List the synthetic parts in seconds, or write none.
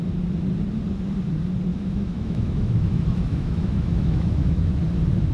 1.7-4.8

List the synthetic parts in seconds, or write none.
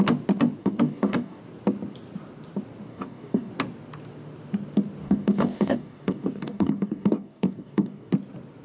0.6-1.4; 2.9-3.5; 5.0-8.1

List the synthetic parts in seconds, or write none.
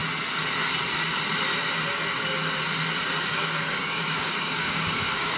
3.2-5.4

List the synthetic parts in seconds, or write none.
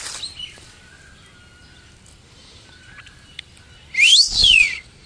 4.4-5.1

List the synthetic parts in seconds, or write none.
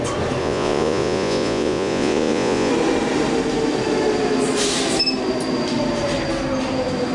0.4-2.7